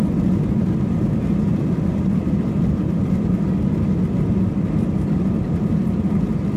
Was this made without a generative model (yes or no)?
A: yes